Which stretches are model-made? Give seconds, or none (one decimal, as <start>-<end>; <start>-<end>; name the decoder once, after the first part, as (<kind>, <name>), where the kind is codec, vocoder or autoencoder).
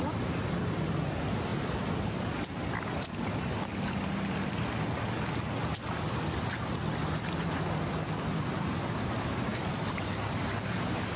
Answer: none